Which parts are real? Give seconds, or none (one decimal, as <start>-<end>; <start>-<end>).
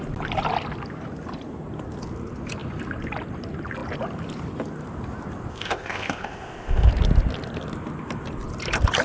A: 0.0-5.5; 6.9-9.0